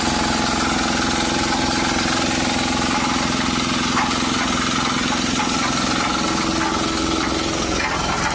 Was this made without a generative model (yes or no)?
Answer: yes